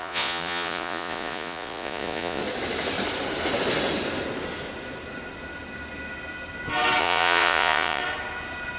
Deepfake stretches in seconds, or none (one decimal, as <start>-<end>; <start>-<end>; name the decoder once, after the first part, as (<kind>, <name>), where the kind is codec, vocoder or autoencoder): 0.0-2.4 (vocoder, Vocos); 7.0-8.0

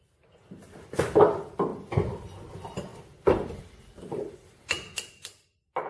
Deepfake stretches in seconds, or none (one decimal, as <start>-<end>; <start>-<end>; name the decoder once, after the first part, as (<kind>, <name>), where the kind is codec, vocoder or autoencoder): none